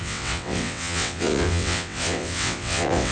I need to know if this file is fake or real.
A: fake